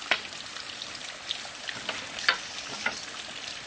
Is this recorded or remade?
recorded